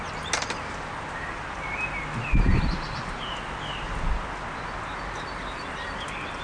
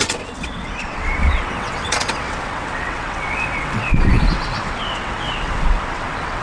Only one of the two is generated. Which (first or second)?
second